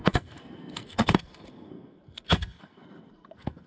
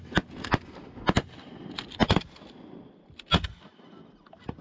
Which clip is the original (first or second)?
second